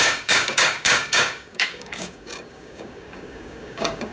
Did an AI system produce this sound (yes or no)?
yes